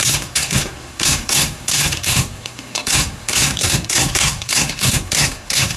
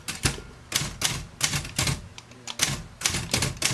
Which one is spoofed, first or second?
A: first